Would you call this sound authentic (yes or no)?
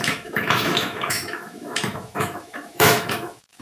no